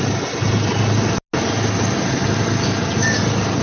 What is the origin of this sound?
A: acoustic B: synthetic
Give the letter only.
A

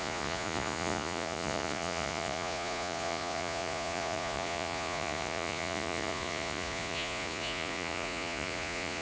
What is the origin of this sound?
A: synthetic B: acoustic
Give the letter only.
A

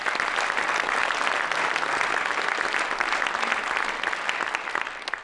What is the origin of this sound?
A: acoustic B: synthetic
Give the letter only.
A